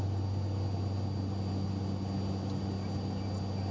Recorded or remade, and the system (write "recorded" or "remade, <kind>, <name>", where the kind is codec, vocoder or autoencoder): recorded